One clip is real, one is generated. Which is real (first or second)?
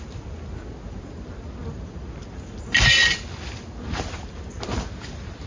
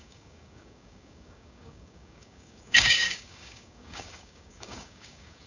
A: first